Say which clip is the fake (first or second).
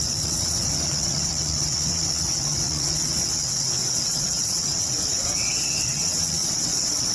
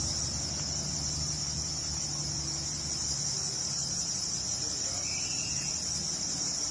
first